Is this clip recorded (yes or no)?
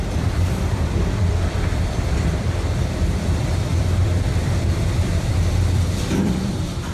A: no